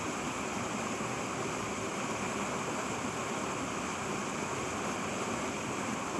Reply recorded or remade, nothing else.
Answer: recorded